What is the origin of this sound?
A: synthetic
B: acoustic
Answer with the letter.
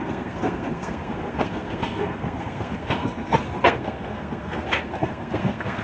A